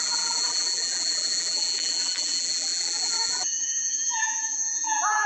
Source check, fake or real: fake